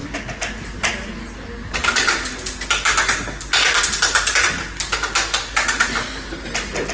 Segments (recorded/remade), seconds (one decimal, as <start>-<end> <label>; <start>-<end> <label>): 0.0-6.9 recorded